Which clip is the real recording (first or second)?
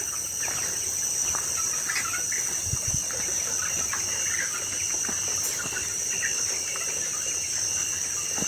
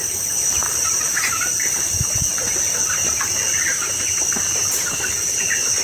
first